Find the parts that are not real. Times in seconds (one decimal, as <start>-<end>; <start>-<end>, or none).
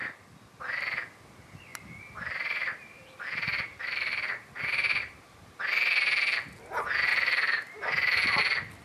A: 1.7-5.6; 7.1-8.4